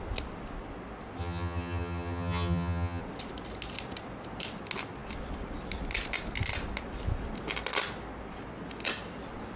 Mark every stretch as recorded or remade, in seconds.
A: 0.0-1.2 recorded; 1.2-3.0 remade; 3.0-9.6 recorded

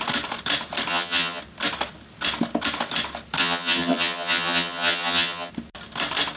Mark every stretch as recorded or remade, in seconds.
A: 0.0-0.9 recorded; 0.9-1.4 remade; 1.4-3.4 recorded; 3.4-5.5 remade; 5.5-6.4 recorded